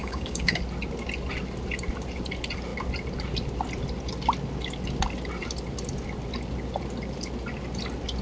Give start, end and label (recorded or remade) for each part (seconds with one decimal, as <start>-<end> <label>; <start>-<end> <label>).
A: 0.0-0.6 remade; 0.6-8.2 recorded